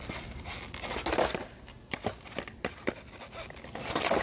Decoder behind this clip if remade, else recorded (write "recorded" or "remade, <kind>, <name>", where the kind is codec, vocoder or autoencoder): recorded